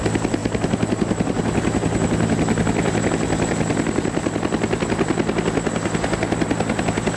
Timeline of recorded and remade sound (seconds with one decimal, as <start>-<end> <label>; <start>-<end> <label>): 0.0-7.2 recorded